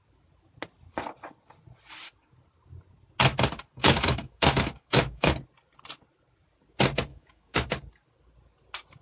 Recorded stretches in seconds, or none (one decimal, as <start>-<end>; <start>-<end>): 0.0-3.8; 5.3-7.1; 7.7-9.0